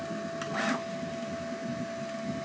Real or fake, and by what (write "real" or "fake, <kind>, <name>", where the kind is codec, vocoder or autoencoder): real